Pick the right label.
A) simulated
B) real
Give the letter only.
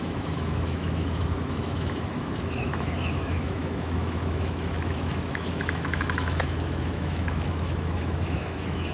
A